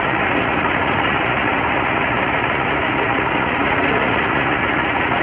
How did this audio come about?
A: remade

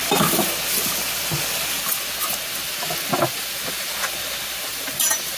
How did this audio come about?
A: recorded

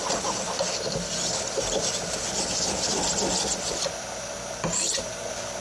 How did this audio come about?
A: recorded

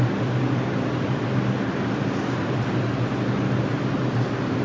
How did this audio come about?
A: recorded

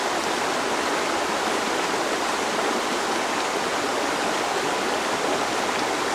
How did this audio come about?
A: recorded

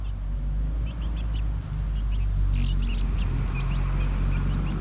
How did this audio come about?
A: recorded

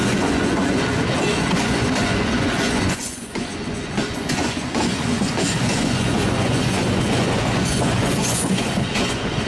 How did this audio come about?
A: remade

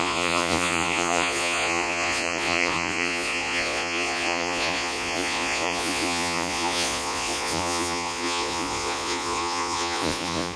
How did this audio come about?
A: remade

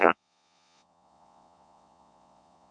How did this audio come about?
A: remade